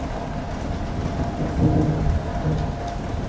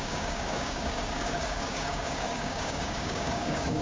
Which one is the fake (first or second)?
second